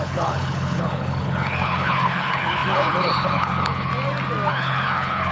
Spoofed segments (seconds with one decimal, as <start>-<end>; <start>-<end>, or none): 0.0-3.9; 4.5-5.3